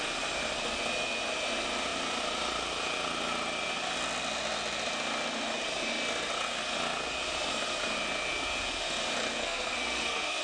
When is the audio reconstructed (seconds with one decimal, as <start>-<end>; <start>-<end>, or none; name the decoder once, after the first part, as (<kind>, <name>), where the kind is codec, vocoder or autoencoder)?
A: 9.4-10.4 (codec, SNAC)